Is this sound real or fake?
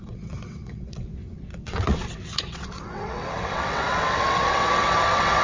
fake